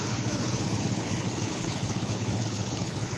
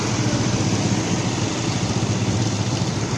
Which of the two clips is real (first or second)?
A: second